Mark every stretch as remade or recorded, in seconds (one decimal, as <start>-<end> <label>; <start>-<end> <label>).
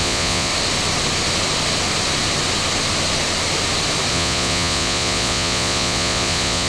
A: 0.0-0.5 remade; 0.5-4.1 recorded; 4.1-6.7 remade